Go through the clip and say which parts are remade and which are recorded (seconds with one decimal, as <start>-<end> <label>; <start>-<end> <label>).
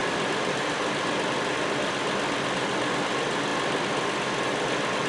0.0-5.1 recorded